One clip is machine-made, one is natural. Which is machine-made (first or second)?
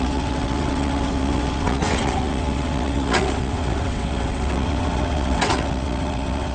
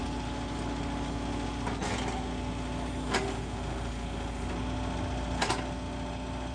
first